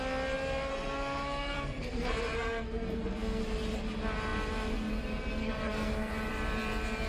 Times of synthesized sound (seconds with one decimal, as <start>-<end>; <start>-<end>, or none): 0.7-3.4; 5.4-6.1